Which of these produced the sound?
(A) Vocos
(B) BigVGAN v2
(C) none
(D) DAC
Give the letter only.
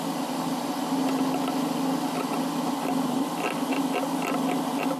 C